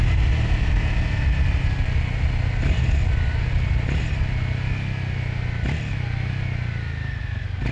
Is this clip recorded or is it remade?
recorded